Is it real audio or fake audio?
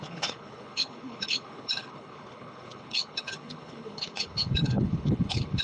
fake